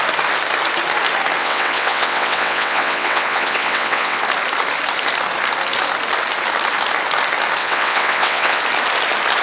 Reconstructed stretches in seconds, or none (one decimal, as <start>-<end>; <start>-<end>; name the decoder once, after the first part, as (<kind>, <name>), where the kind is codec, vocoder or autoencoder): 1.4-4.2 (vocoder, WaveNeXt); 7.6-8.6